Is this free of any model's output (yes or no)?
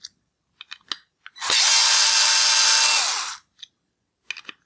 yes